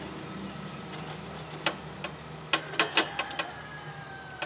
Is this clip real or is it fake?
real